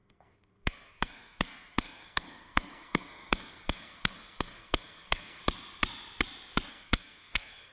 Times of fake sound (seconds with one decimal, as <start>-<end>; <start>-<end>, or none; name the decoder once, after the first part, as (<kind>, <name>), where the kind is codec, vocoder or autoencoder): 0.0-5.4 (codec, SNAC); 6.7-7.7